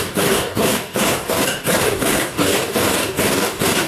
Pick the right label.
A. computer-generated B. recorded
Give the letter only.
A